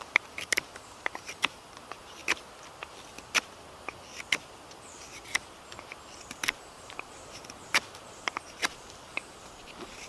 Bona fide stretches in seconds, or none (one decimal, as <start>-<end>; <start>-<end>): 2.2-6.2